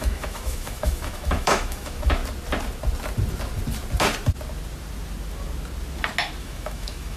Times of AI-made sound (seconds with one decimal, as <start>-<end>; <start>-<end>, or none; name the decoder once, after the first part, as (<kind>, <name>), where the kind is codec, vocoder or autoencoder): 0.0-2.2 (autoencoder, DAC-VAE); 6.4-7.2